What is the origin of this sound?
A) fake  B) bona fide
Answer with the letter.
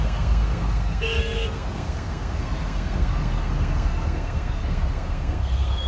A